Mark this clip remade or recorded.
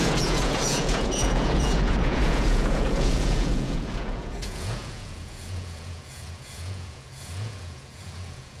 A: remade